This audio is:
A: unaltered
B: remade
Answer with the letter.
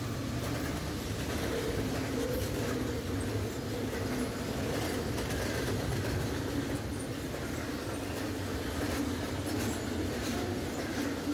A